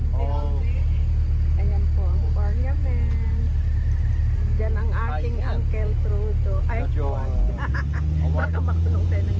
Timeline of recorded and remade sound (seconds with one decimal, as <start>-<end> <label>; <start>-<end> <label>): 0.0-9.4 recorded